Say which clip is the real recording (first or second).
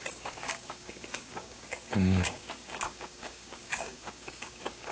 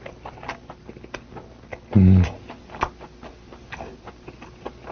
second